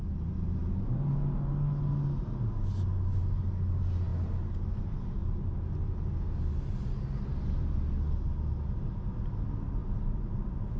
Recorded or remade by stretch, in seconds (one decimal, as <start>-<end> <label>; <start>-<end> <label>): 0.0-10.8 recorded